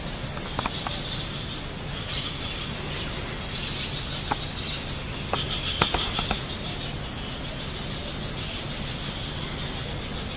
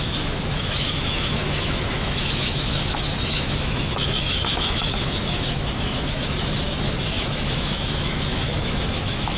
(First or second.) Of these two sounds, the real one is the first